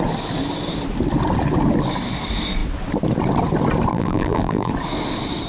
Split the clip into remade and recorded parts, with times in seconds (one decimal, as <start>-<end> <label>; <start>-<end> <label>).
0.0-3.9 recorded; 3.9-4.7 remade; 4.7-5.5 recorded